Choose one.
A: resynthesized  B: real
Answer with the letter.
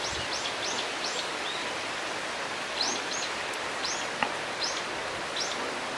B